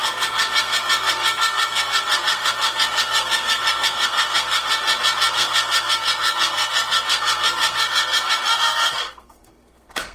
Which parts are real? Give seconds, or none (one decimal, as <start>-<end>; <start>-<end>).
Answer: 4.7-5.3

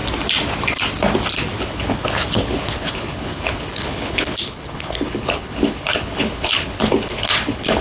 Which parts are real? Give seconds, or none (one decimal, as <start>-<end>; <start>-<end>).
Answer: 0.0-1.6